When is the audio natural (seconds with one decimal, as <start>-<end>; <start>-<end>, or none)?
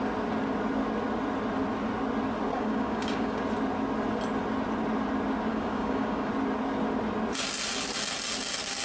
0.0-2.5; 3.4-5.5; 6.3-8.8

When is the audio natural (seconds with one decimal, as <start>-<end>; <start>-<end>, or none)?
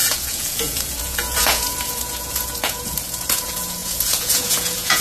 none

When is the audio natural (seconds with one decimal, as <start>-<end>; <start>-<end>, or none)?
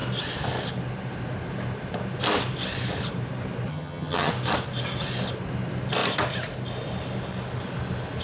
0.0-3.7; 4.3-8.2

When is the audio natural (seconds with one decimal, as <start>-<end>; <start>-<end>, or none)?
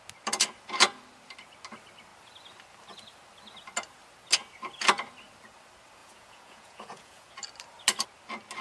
0.0-6.0; 7.3-8.6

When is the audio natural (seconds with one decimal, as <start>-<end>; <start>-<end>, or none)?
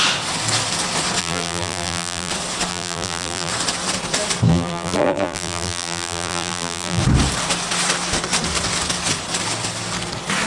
0.0-1.2; 2.3-2.7; 3.5-4.5; 7.0-10.5